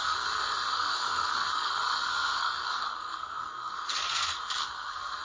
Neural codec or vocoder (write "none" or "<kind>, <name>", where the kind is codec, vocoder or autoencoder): codec, SNAC